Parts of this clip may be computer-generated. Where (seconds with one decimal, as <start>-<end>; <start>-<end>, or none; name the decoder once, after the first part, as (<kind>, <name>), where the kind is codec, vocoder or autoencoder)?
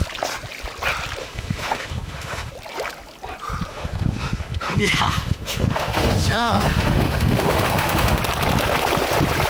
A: 1.2-2.5 (autoencoder, DAC-VAE); 3.7-8.2